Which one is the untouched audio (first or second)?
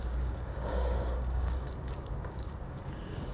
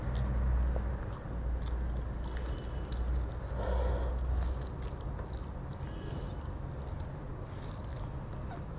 second